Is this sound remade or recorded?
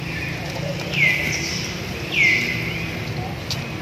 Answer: recorded